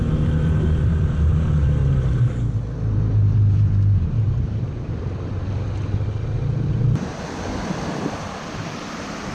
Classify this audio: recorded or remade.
recorded